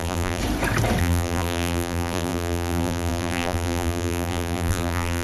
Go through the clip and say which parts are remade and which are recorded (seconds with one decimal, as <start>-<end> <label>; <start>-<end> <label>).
0.0-0.4 remade; 0.4-1.0 recorded; 1.0-5.2 remade